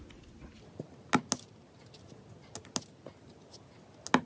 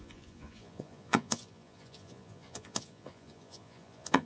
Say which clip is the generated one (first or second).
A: second